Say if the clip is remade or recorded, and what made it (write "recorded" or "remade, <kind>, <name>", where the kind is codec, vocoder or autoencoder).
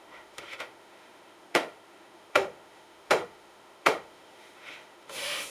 remade, autoencoder, DAC-VAE